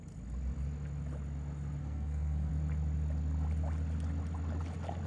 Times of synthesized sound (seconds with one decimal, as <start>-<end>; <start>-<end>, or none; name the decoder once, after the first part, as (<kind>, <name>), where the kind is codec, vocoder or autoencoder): 1.8-2.5 (codec, SNAC)